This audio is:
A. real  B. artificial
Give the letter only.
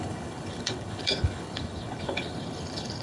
B